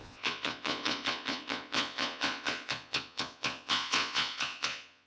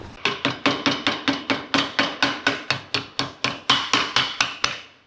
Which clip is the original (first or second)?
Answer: second